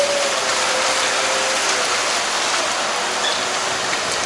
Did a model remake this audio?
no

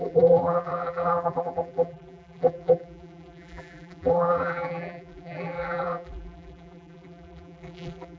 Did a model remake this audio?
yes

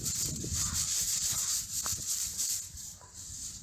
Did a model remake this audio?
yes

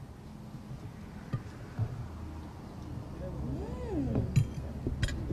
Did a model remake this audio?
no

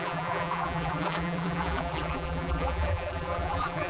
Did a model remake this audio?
yes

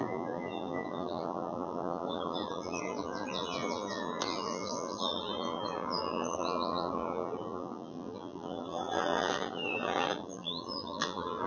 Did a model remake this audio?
yes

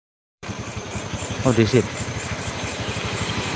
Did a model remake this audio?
yes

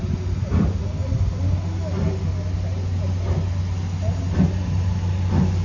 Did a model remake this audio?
no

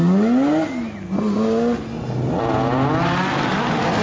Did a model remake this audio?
no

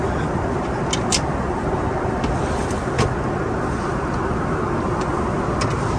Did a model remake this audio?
no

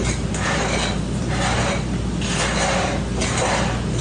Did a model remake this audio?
no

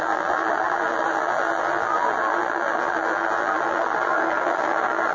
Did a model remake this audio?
yes